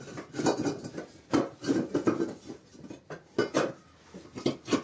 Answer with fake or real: real